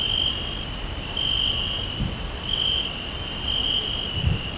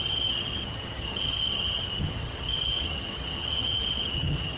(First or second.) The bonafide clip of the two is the first